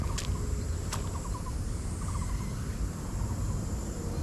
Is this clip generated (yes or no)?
no